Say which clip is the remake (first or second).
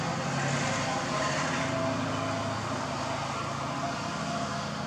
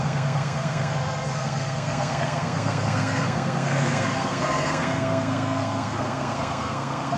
second